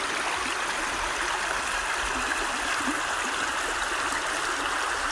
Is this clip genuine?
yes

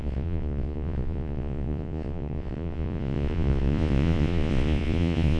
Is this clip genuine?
no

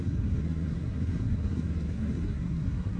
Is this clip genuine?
no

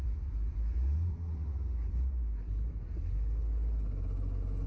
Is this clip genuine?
yes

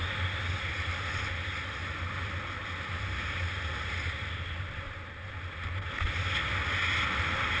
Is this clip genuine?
yes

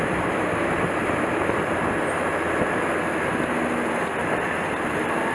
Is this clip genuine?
yes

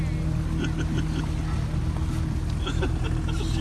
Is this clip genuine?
yes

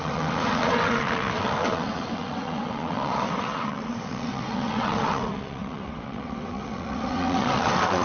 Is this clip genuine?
no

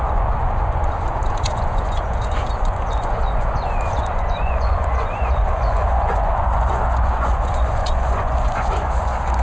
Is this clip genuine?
no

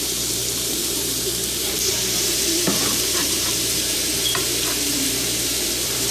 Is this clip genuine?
no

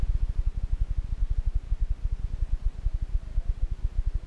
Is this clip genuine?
yes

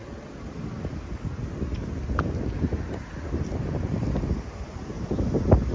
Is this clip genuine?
yes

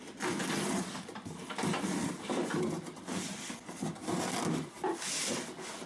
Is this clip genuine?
yes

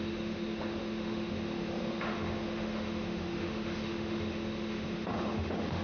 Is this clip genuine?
no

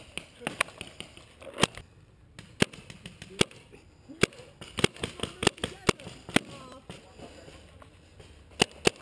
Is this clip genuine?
yes